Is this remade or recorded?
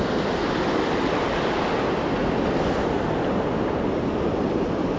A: recorded